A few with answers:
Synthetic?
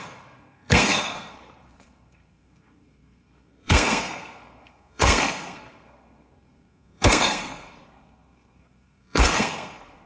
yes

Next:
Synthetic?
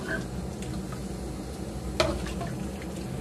no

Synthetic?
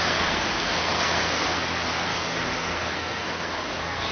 yes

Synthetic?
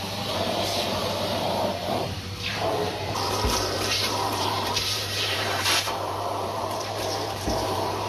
yes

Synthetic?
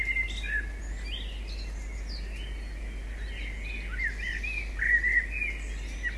no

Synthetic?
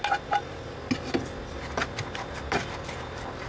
no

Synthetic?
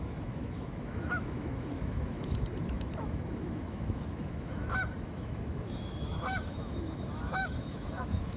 yes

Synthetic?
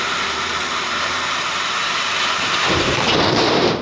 yes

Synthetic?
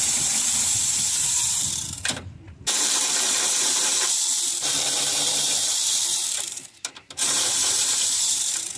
yes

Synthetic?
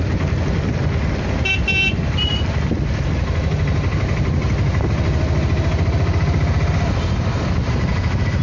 no